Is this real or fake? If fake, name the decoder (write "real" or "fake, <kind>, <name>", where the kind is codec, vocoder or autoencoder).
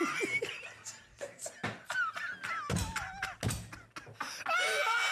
real